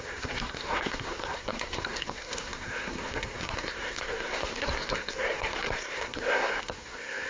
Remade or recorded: remade